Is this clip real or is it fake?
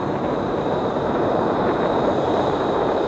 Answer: fake